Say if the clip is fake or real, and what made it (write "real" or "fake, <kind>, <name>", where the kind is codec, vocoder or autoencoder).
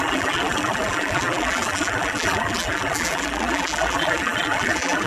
fake, vocoder, BigVGAN v2